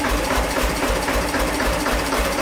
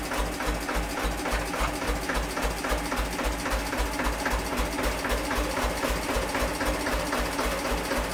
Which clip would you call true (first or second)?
second